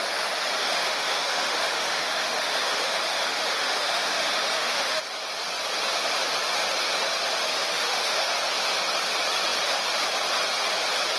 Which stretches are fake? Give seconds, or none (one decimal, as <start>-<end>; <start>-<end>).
0.6-5.0; 7.5-8.4